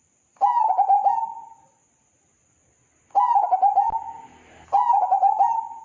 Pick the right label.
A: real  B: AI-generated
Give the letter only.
A